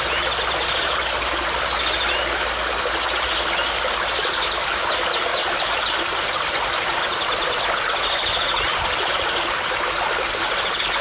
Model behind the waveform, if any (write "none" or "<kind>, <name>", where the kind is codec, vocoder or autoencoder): none